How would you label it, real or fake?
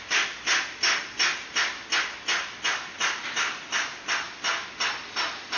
real